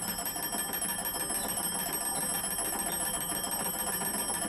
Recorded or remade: recorded